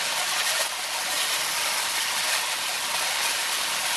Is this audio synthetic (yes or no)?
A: no